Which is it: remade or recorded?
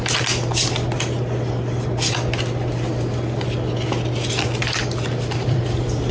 recorded